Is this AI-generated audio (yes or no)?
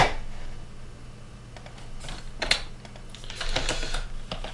no